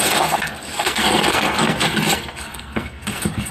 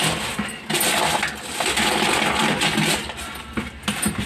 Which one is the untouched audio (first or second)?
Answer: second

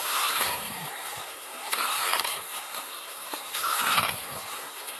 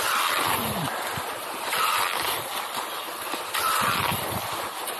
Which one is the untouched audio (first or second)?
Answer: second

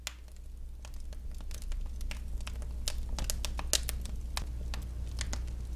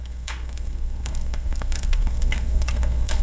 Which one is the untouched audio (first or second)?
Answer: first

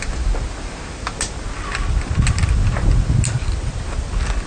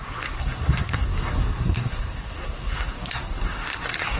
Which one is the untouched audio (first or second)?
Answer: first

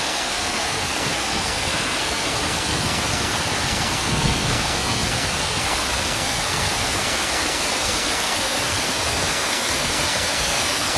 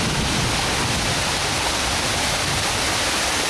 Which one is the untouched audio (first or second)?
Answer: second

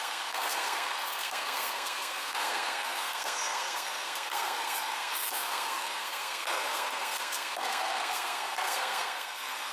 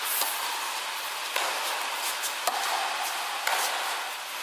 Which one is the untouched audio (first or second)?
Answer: second